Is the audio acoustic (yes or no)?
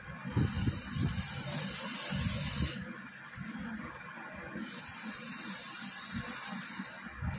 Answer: yes